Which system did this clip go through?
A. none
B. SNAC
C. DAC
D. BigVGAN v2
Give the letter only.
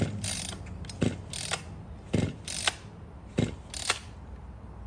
A